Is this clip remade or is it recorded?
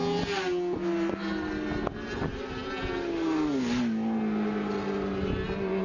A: recorded